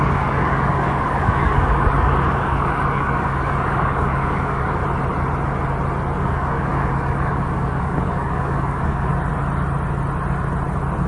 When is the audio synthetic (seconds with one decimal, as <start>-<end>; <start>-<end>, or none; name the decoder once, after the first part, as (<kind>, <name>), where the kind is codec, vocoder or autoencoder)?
0.0-4.8 (codec, DAC); 6.2-9.1